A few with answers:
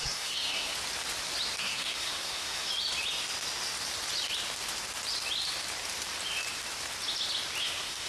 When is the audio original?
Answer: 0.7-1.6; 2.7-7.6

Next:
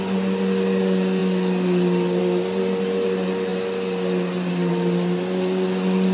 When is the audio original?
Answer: 0.0-6.1

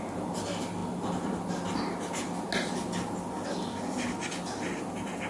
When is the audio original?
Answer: 0.0-5.3

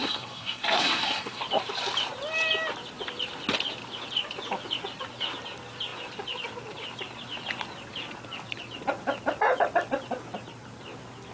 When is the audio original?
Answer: 1.4-11.3